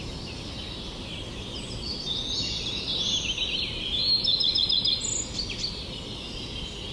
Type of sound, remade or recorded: recorded